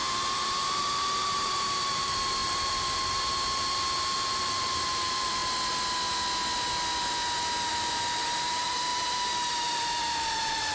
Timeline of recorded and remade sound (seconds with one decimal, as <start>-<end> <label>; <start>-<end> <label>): 0.0-5.4 remade; 5.4-7.7 recorded; 7.7-10.7 remade